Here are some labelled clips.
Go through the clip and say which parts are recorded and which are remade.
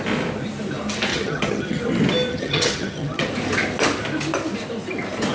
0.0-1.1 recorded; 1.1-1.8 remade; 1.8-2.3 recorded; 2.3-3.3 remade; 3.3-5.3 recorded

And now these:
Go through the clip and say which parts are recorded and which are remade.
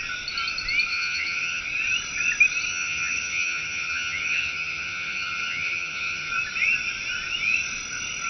0.0-0.9 recorded; 0.9-1.6 remade; 1.6-2.7 recorded; 2.7-6.3 remade; 6.3-8.3 recorded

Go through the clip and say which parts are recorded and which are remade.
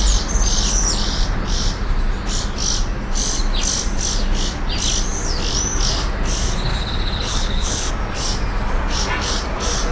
0.0-6.7 recorded; 6.7-7.9 remade; 7.9-9.9 recorded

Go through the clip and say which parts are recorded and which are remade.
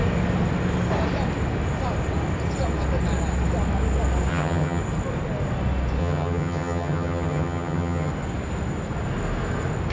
0.0-4.3 recorded; 4.3-4.8 remade; 4.8-6.0 recorded; 6.0-8.1 remade; 8.1-9.9 recorded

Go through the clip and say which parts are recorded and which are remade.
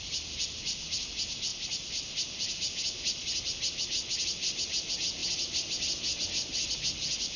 0.0-1.5 recorded; 1.5-2.0 remade; 2.0-7.4 recorded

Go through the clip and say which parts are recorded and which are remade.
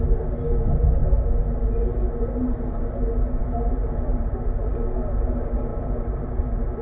0.0-3.4 recorded; 3.4-4.3 remade; 4.3-5.7 recorded; 5.7-6.3 remade; 6.3-6.8 recorded